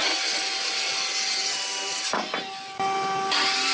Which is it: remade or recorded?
recorded